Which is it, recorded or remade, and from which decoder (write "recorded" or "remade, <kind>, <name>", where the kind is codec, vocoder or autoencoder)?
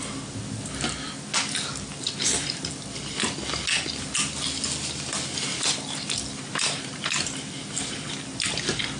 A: recorded